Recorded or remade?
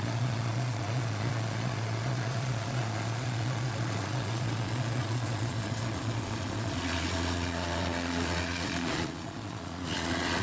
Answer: remade